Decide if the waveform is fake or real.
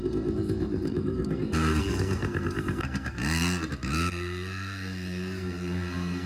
fake